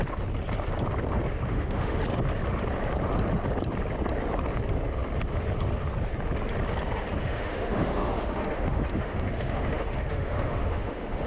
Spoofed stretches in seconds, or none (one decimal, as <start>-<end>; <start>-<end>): 1.5-2.0; 7.2-11.3

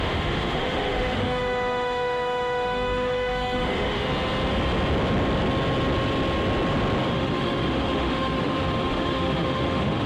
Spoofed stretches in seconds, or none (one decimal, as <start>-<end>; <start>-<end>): 0.0-4.1; 7.1-10.1

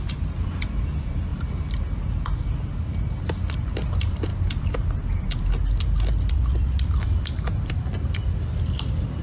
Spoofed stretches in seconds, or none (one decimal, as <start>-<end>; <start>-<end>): 0.0-1.3; 3.1-4.3; 6.3-9.2

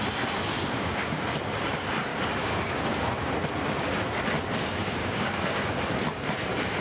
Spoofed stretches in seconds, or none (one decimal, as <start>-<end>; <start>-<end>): 0.6-1.2; 2.1-3.3; 5.0-5.7

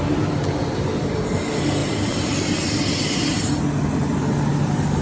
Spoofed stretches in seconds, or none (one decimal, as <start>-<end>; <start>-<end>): 0.0-1.2

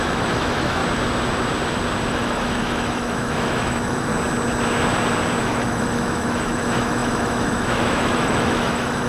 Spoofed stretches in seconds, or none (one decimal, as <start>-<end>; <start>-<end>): 0.0-0.8; 2.1-4.1; 5.4-9.1

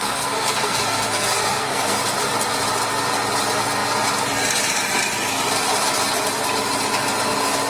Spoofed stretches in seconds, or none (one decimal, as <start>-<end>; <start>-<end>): 0.0-2.0

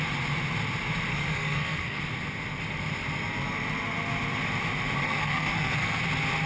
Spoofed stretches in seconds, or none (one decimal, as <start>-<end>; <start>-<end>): 1.1-2.0; 5.0-6.0